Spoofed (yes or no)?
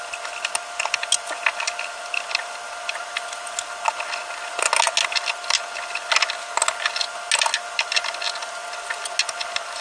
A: no